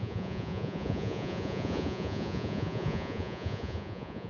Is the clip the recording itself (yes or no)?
no